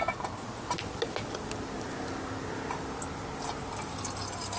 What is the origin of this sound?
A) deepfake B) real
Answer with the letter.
B